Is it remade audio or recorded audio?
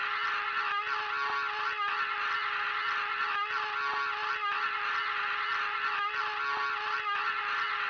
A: recorded